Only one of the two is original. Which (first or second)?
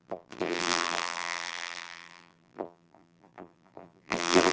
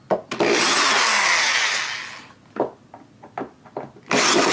second